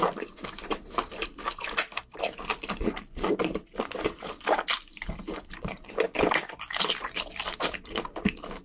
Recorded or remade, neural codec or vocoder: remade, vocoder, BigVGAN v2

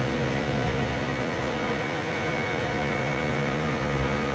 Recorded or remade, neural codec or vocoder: remade, vocoder, Vocos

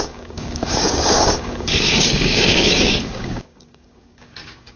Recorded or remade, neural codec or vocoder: remade, codec, DAC